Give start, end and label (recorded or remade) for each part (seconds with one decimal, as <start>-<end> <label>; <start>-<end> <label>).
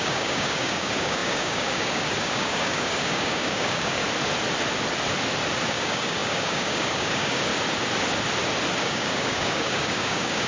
0.0-4.0 remade; 4.0-5.7 recorded; 5.7-7.5 remade; 7.5-8.8 recorded; 8.8-10.5 remade